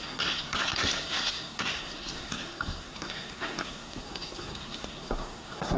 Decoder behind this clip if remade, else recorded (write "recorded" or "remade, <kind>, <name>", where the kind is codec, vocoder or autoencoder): remade, codec, SNAC